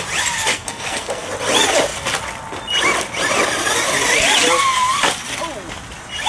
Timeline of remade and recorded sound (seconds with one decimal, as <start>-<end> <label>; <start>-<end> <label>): 0.0-0.5 recorded; 0.5-1.3 remade; 1.3-6.3 recorded